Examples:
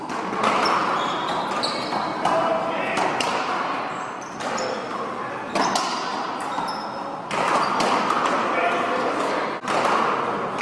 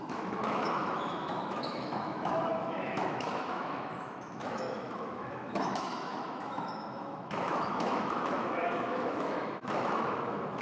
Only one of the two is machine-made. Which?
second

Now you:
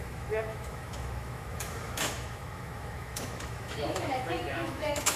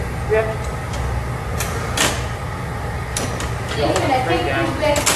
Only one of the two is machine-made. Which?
first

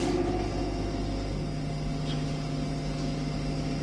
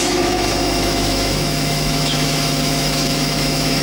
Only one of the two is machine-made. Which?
second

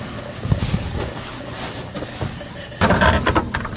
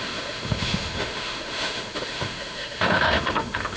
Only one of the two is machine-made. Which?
second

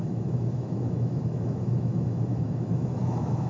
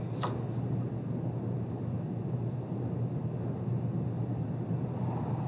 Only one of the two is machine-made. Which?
first